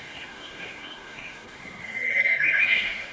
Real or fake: fake